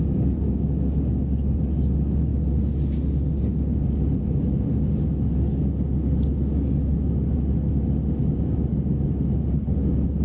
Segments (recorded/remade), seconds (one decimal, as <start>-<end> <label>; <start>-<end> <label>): 0.0-10.2 recorded